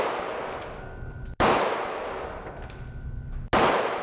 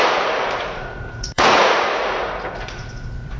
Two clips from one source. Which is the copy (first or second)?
second